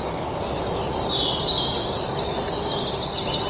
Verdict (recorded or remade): recorded